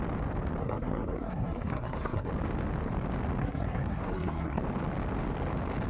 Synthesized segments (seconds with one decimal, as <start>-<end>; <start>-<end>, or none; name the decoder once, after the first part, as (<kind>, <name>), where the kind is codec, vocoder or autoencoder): 0.6-2.3 (codec, SNAC); 3.4-4.6